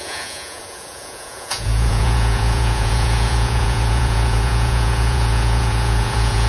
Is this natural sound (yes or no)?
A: no